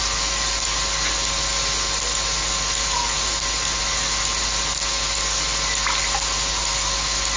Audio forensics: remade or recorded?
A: recorded